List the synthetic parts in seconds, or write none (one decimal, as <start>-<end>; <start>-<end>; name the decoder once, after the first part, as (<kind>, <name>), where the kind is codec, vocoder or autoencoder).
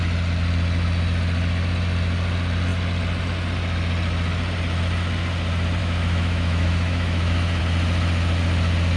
5.8-7.6 (autoencoder, DAC-VAE)